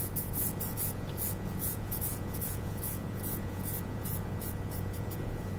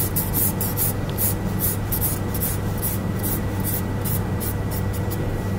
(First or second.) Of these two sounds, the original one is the second